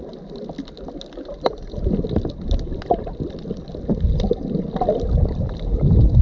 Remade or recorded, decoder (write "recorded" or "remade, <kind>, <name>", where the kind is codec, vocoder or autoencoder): recorded